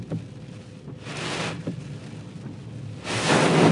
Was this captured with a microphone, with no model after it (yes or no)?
yes